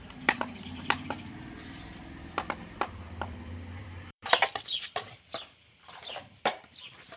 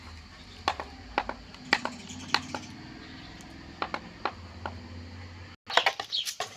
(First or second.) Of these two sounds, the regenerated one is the first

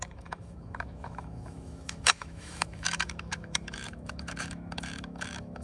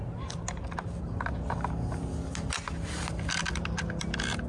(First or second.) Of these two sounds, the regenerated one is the first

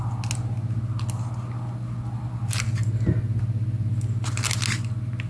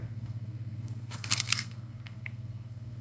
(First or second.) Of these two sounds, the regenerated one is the second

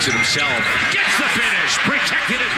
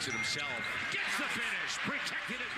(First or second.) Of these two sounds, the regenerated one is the first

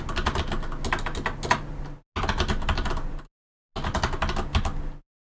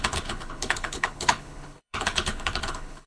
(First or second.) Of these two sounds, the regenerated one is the second